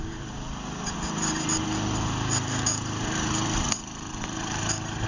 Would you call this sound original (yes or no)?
no